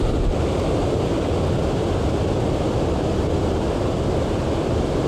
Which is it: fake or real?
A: real